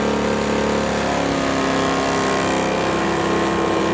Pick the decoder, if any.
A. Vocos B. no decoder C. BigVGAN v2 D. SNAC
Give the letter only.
B